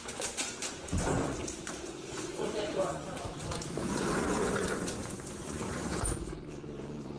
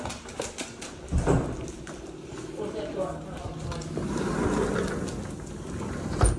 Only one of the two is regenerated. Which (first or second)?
first